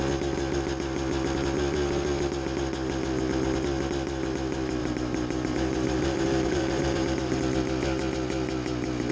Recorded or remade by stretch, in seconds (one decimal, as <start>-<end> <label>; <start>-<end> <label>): 0.0-4.8 recorded; 4.8-7.4 remade; 7.4-9.1 recorded